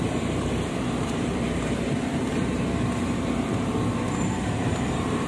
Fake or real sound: fake